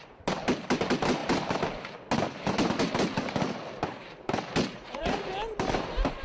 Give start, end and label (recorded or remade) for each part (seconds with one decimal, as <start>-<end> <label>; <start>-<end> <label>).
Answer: 0.0-4.7 recorded; 4.7-5.3 remade; 5.3-6.2 recorded